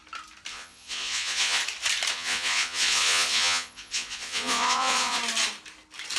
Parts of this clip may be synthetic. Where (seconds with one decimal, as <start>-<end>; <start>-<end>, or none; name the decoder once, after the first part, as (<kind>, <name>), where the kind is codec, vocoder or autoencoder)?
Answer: 0.5-1.6 (vocoder, Vocos); 2.1-5.2

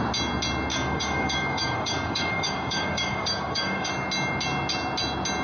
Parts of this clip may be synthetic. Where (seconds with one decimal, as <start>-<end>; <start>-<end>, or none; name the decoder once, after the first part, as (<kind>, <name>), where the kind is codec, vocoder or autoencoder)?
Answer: 0.7-3.9 (codec, DAC)

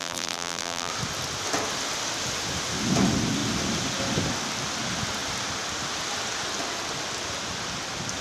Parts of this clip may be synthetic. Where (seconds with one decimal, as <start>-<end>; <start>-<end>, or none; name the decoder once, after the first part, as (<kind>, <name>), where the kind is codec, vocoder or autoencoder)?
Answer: 0.0-0.9 (vocoder, BigVGAN v2)

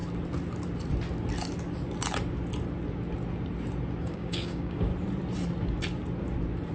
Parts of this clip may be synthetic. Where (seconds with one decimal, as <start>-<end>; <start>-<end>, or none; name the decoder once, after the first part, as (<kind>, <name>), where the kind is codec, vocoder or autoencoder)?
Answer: 4.0-4.9 (codec, DAC)

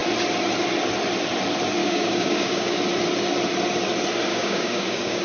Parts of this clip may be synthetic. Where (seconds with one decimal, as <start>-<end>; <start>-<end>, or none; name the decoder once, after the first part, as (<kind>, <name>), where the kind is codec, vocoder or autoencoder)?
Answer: 1.8-2.8 (codec, DAC); 4.3-5.2

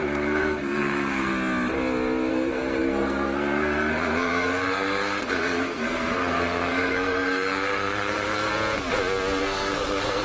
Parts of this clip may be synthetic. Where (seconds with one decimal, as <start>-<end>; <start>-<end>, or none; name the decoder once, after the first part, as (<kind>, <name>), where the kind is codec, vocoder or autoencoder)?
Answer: 0.0-1.3 (codec, SNAC); 2.3-8.5; 9.4-10.2

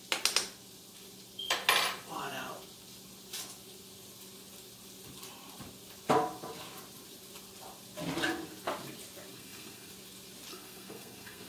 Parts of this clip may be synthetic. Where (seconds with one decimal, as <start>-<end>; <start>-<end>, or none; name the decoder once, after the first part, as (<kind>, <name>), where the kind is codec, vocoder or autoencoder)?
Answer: 9.3-9.9 (codec, SNAC); 10.5-11.5

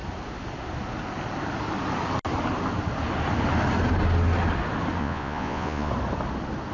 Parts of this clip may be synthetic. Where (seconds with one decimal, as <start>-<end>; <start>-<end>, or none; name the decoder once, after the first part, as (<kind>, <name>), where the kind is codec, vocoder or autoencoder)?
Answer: 5.0-5.9 (vocoder, Vocos)